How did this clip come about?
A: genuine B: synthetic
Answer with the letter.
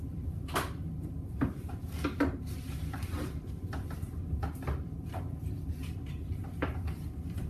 B